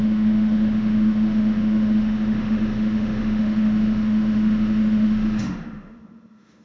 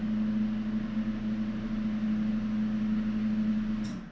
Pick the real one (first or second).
second